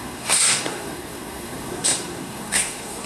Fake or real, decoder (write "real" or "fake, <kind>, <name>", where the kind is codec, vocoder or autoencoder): fake, codec, SNAC